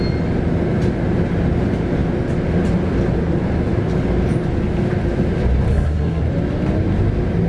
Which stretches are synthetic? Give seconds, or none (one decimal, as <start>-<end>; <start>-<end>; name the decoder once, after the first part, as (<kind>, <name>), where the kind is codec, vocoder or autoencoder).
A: 5.7-6.2 (codec, SNAC)